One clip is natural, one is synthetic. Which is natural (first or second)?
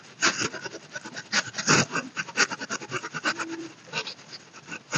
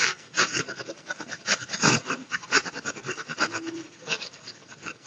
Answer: first